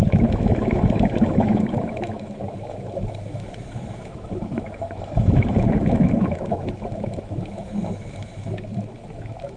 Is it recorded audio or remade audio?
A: remade